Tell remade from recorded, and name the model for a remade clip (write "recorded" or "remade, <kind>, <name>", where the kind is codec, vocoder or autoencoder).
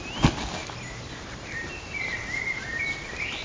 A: recorded